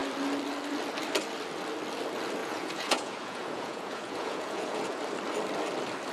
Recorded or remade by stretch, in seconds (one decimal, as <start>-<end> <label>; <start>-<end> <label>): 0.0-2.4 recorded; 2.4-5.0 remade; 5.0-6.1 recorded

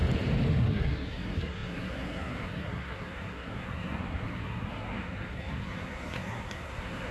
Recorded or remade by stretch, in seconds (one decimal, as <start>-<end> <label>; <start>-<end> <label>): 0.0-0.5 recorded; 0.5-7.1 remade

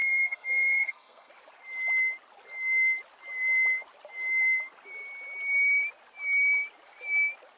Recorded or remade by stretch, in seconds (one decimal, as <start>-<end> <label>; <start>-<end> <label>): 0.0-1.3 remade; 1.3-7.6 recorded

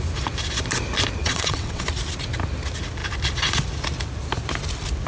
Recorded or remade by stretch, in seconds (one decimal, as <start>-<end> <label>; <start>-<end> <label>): 0.0-1.2 recorded; 1.2-1.9 remade; 1.9-5.1 recorded